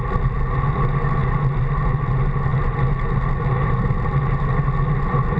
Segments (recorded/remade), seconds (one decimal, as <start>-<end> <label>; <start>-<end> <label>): 0.0-5.4 recorded